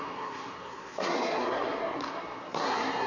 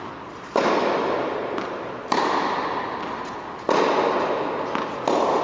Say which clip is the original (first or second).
second